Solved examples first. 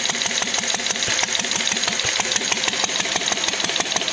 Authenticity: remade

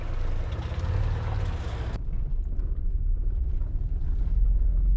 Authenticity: recorded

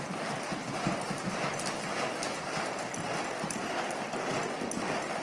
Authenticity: recorded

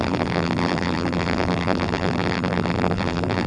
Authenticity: remade